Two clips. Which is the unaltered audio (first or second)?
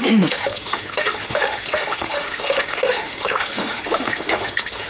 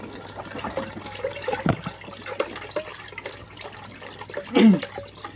second